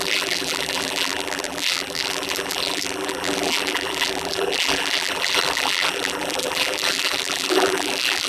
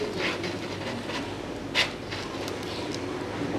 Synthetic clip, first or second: first